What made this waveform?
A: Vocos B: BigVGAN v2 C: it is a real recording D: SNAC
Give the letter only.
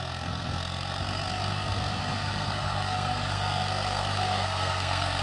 D